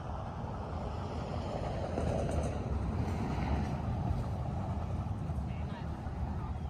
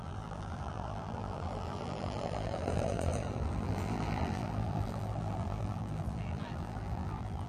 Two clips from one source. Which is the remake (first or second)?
second